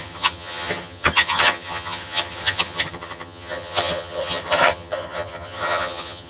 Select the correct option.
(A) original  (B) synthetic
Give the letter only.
B